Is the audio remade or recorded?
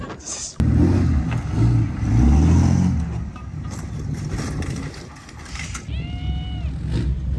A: recorded